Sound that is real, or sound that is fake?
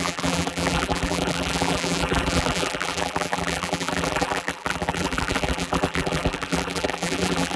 fake